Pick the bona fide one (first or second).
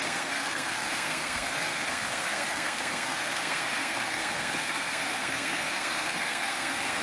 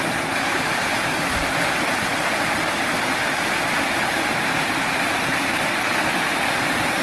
second